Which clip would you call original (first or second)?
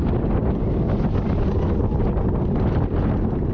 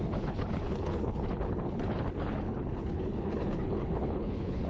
first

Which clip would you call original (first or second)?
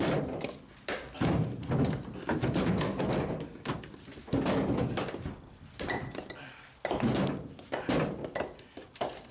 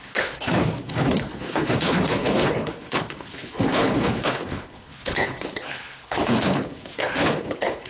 first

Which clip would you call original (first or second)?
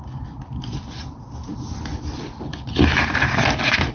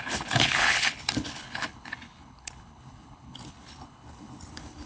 first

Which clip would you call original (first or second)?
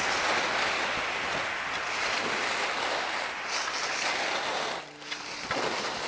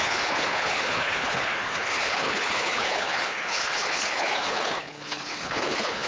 first